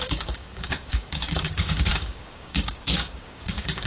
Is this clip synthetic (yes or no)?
yes